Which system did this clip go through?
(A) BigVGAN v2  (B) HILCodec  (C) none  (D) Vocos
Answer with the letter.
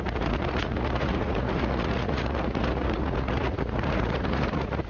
D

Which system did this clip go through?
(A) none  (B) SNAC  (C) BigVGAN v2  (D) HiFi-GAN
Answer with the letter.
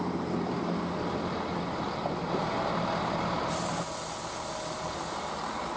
A